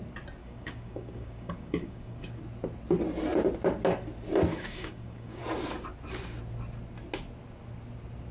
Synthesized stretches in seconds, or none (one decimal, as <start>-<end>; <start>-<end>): 0.4-2.4; 4.5-5.4